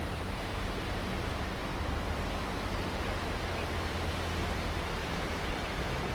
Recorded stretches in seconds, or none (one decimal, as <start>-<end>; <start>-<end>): 0.0-5.0; 5.5-6.1